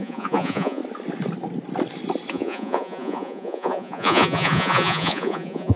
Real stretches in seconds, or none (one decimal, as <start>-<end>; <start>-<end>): 0.8-2.3